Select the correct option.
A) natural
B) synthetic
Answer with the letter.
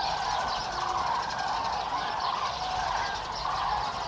A